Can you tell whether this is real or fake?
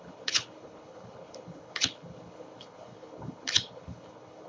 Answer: fake